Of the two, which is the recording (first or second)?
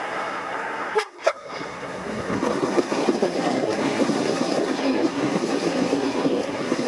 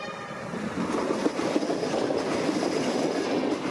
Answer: second